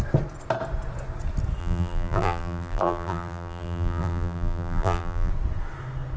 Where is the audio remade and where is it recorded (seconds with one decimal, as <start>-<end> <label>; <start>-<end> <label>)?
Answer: 0.0-1.6 recorded; 1.6-5.3 remade; 5.3-6.2 recorded